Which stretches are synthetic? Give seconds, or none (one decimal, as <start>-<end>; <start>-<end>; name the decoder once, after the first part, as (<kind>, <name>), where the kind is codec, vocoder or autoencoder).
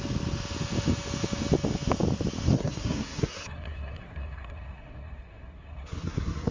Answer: 2.5-6.5 (codec, SNAC)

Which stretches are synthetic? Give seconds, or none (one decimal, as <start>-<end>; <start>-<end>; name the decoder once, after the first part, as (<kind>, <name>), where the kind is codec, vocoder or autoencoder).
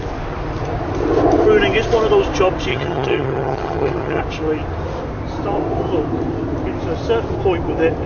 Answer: 2.7-4.2 (vocoder, HiFi-GAN)